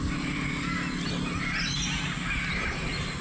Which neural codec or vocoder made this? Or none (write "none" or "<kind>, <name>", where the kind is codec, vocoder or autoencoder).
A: none